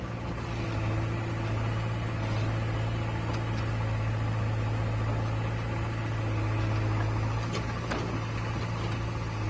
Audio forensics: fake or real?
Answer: real